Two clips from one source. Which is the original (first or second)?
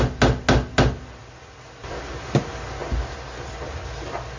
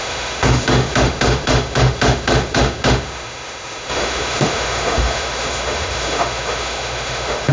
first